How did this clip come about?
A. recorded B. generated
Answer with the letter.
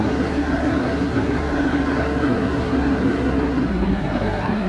B